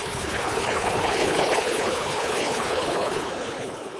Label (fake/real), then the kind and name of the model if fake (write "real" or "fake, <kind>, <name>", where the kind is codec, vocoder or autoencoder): fake, codec, HILCodec